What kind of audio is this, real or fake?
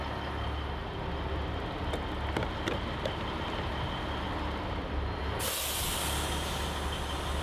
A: real